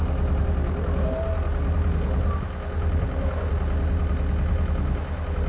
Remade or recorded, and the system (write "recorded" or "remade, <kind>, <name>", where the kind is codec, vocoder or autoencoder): recorded